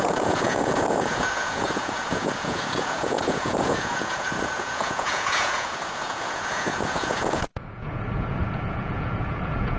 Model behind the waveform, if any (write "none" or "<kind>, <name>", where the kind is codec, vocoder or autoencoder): vocoder, Vocos